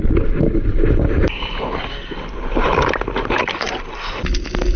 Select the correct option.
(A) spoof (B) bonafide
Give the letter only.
B